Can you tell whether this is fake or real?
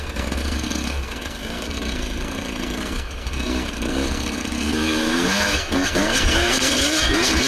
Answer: fake